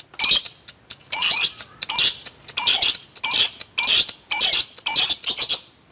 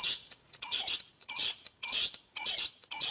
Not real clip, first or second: second